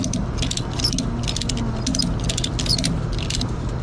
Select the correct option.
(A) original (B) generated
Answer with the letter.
A